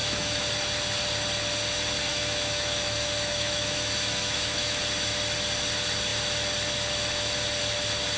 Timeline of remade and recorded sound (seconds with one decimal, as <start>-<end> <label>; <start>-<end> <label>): 0.0-0.5 remade; 0.5-2.1 recorded; 2.1-4.8 remade; 4.8-8.2 recorded